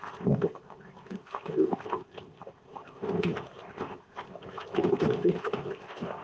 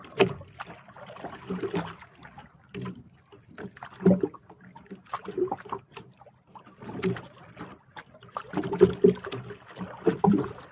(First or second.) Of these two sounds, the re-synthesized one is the first